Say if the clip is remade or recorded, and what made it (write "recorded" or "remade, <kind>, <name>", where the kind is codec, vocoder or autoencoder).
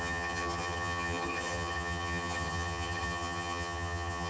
remade, vocoder, HiFi-GAN